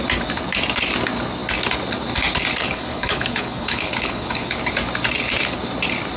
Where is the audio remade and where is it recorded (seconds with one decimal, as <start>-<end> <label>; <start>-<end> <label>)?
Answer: 0.0-2.6 recorded; 2.6-4.6 remade; 4.6-6.2 recorded